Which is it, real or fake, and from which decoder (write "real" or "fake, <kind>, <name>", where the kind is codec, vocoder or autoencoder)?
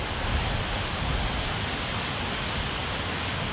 real